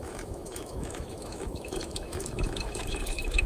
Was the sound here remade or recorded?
remade